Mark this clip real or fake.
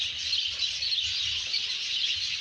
real